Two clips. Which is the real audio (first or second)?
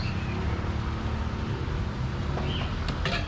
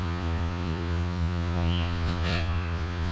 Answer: first